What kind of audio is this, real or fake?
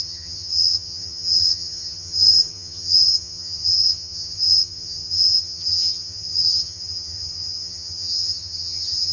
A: fake